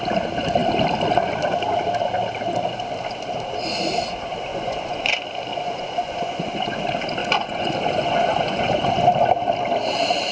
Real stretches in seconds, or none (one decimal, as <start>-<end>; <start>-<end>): 0.0-4.5; 5.1-5.5; 6.8-7.2; 8.9-10.3